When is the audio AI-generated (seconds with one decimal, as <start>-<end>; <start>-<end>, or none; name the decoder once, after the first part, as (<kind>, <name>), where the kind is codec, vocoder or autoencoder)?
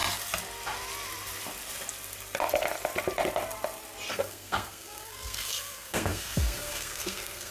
4.1-7.5 (codec, SNAC)